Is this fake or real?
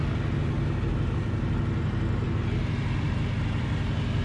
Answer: real